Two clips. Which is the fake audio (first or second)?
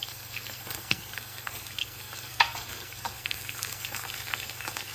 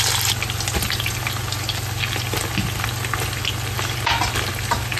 first